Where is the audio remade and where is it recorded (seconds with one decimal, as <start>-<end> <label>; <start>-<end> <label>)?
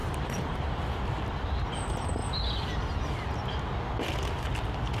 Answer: 0.0-0.8 remade; 0.8-5.0 recorded